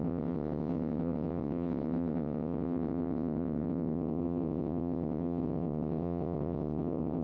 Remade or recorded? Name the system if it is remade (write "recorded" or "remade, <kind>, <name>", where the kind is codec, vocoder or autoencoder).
remade, vocoder, WaveNeXt